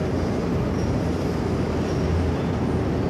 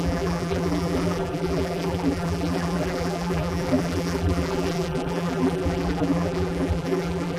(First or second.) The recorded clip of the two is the first